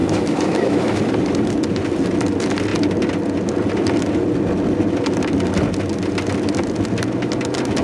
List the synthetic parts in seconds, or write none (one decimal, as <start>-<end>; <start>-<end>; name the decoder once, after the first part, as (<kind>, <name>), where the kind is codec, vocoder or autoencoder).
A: 0.0-1.0 (autoencoder, DAC-VAE)